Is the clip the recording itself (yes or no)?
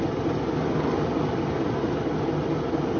yes